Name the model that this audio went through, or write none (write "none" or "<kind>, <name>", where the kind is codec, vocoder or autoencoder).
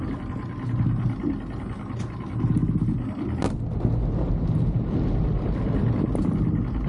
none